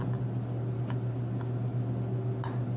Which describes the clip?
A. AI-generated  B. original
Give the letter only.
B